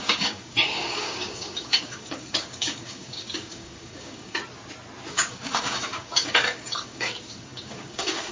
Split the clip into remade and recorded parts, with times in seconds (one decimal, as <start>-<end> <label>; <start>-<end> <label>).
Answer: 0.0-4.4 remade; 4.4-5.1 recorded; 5.1-8.3 remade